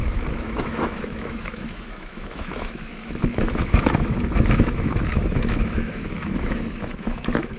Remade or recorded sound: remade